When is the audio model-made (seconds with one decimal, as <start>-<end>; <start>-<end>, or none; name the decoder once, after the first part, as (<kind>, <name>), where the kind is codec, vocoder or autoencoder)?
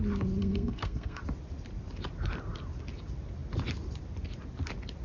0.4-1.2 (codec, SNAC)